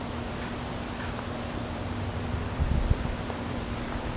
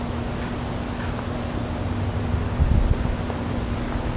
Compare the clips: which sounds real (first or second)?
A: second